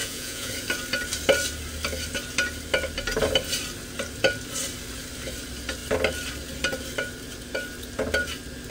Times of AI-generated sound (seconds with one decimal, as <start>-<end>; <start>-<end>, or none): 0.0-0.5